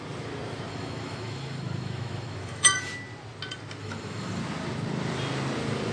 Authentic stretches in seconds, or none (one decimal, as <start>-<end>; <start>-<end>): 0.0-0.7; 2.9-3.8; 4.4-5.9